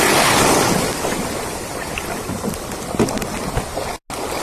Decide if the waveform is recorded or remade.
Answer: recorded